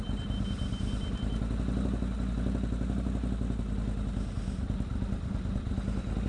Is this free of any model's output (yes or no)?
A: yes